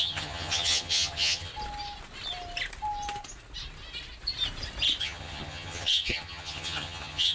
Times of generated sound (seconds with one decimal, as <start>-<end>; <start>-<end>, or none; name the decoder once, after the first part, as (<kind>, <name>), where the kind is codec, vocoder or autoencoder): 0.0-1.5 (vocoder, HiFi-GAN); 5.0-7.3